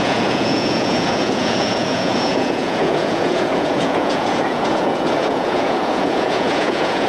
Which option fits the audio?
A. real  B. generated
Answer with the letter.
B